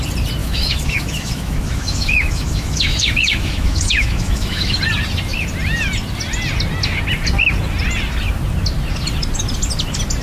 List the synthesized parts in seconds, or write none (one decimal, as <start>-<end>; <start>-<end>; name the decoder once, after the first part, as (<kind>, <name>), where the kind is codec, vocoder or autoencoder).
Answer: 0.4-4.8 (autoencoder, DAC-VAE)